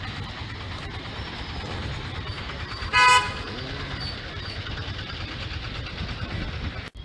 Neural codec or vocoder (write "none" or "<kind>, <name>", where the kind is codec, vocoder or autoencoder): none